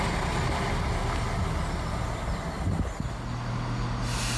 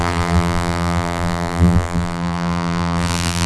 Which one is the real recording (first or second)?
first